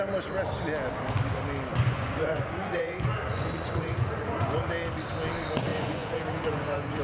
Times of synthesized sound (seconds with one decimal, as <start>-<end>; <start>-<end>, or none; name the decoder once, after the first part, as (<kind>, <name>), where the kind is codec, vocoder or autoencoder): 1.7-4.6 (vocoder, Vocos); 5.7-7.0